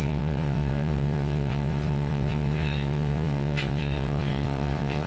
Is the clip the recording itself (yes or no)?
no